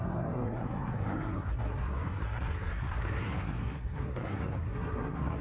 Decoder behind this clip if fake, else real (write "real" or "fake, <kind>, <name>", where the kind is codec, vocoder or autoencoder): fake, codec, SNAC